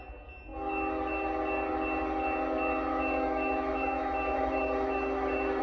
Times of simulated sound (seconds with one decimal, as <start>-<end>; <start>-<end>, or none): 2.9-5.6